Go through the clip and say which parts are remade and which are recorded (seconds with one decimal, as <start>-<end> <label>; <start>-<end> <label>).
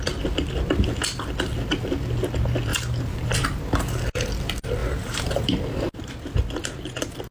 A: 0.0-2.7 recorded; 2.7-3.6 remade; 3.6-4.8 recorded; 4.8-6.1 remade; 6.1-7.3 recorded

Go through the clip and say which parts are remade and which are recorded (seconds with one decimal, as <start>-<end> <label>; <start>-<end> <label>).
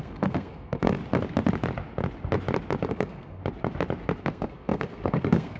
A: 0.0-1.0 remade; 1.0-2.9 recorded; 2.9-3.4 remade; 3.4-4.2 recorded; 4.2-5.6 remade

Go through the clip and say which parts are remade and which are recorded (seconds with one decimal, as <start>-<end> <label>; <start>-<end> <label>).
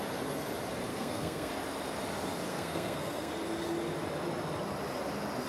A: 0.0-0.9 recorded; 0.9-1.5 remade; 1.5-2.5 recorded; 2.5-3.3 remade; 3.3-5.5 recorded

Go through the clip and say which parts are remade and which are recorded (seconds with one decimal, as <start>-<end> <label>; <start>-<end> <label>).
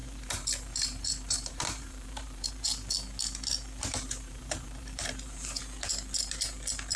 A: 0.0-2.5 remade; 2.5-3.9 recorded; 3.9-5.6 remade; 5.6-7.0 recorded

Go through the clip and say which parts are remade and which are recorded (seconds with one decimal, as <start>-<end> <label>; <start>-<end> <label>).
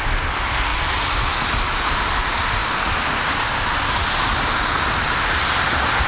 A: 0.0-6.1 recorded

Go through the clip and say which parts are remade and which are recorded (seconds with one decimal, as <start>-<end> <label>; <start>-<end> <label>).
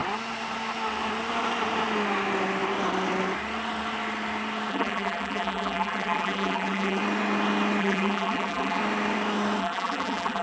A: 0.0-4.7 recorded; 4.7-7.0 remade; 7.0-7.8 recorded; 7.8-8.8 remade; 8.8-9.6 recorded; 9.6-10.4 remade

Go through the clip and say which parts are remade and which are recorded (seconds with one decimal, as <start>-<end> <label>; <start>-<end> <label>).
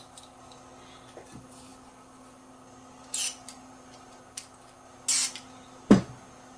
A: 0.0-6.6 recorded